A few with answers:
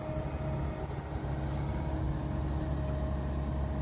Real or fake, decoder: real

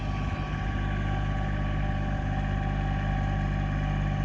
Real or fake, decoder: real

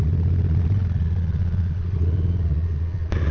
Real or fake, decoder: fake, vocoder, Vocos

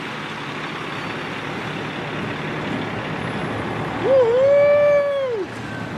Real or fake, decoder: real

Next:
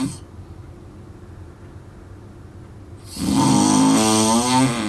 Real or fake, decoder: real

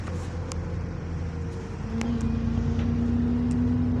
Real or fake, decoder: real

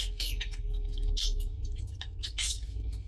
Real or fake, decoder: fake, codec, SNAC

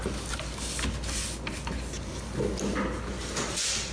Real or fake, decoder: real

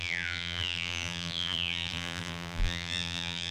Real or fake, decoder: fake, vocoder, BigVGAN v2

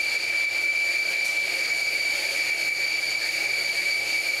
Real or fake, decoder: real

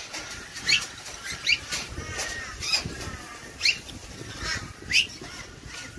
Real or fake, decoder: real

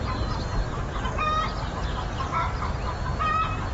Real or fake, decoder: real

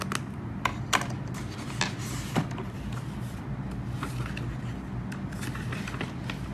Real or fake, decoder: real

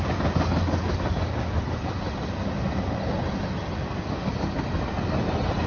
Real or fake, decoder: real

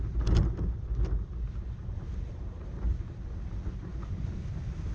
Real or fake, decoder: real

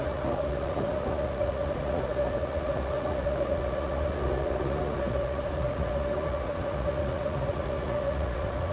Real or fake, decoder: fake, vocoder, Vocos